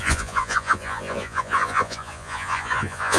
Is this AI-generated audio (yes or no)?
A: yes